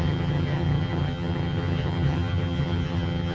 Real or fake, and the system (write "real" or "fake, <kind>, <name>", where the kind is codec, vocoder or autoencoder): fake, vocoder, HiFi-GAN